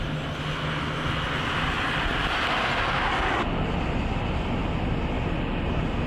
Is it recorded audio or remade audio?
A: recorded